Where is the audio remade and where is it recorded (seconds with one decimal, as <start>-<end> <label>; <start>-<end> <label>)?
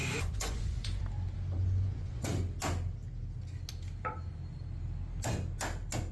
0.0-1.0 remade; 1.0-1.6 recorded; 1.6-2.3 remade; 2.3-6.1 recorded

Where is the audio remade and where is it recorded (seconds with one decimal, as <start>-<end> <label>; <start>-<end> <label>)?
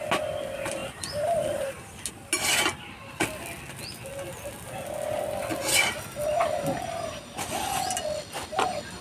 0.0-9.0 recorded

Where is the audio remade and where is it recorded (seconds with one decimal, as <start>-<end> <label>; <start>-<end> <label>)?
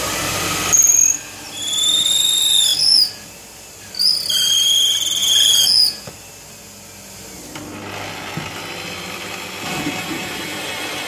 0.0-5.2 recorded; 5.2-6.1 remade; 6.1-11.1 recorded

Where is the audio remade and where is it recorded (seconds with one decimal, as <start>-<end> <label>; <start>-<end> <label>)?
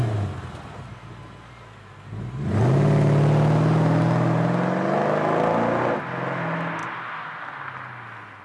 0.0-8.4 recorded